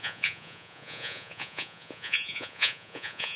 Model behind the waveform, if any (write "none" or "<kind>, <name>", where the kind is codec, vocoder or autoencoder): vocoder, Vocos